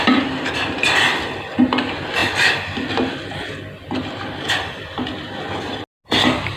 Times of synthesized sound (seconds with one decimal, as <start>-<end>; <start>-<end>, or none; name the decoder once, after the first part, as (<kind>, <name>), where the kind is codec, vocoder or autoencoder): none